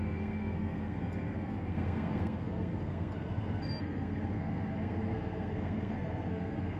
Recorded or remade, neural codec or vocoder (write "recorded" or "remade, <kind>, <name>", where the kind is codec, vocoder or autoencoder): remade, codec, SNAC